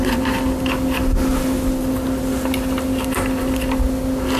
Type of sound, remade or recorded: recorded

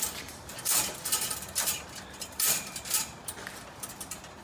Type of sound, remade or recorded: remade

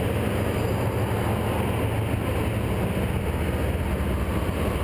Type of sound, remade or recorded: recorded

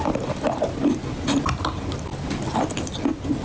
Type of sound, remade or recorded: recorded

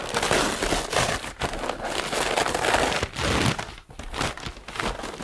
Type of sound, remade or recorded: recorded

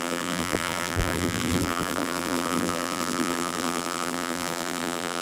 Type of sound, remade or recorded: remade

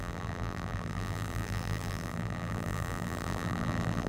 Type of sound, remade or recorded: remade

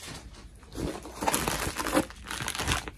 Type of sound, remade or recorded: recorded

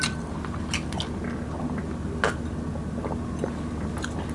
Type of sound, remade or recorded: recorded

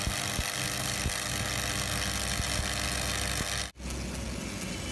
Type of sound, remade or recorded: recorded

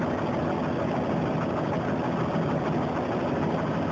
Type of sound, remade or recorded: recorded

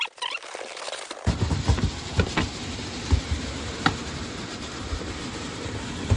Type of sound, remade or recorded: remade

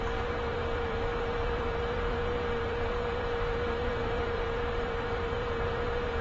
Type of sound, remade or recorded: remade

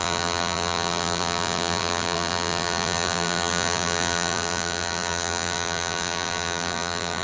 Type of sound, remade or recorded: remade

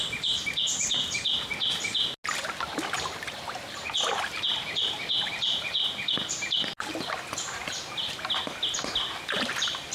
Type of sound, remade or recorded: recorded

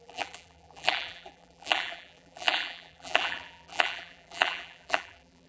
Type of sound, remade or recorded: remade